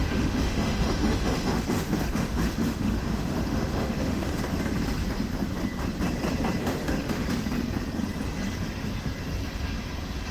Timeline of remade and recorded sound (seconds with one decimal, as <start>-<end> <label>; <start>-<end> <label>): 0.0-4.4 remade; 4.4-6.6 recorded; 6.6-7.3 remade; 7.3-10.3 recorded